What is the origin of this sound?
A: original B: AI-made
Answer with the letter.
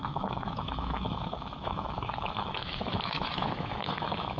B